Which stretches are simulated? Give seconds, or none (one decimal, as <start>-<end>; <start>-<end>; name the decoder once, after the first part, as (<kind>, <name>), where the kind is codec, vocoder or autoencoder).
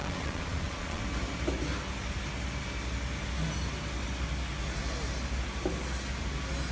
0.0-1.0 (vocoder, Vocos)